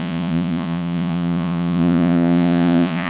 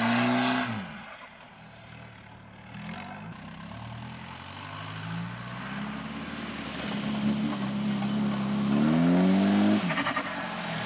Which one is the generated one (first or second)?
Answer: first